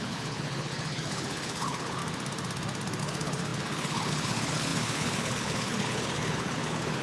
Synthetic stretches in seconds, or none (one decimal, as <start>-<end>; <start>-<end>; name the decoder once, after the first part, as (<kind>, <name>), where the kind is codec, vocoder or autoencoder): 0.0-2.0 (codec, HILCodec); 3.0-7.0